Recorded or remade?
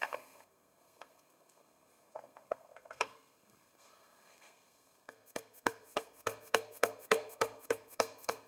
remade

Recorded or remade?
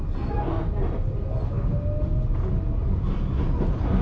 recorded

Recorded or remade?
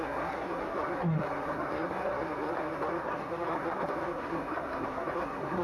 remade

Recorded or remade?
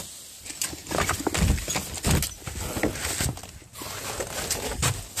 recorded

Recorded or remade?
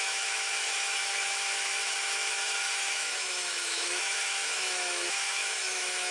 remade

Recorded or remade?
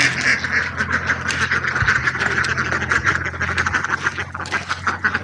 recorded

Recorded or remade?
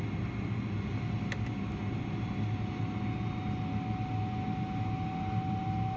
recorded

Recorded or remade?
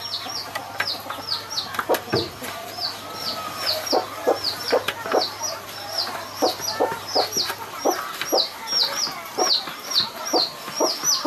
recorded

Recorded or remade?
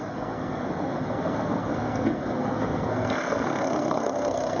remade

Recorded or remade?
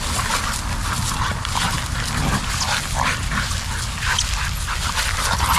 recorded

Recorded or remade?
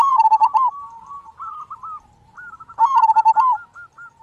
recorded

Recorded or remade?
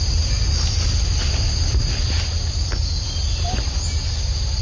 recorded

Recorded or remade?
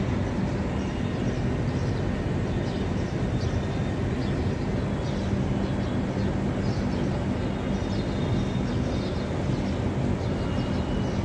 recorded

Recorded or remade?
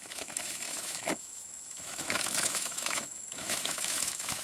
remade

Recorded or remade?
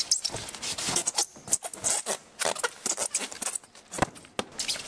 recorded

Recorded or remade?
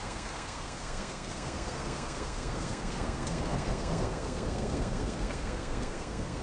remade